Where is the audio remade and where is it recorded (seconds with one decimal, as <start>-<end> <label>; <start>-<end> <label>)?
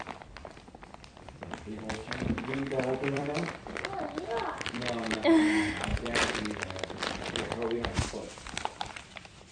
0.0-2.0 recorded; 2.0-3.7 remade; 3.7-5.9 recorded; 5.9-6.8 remade; 6.8-9.5 recorded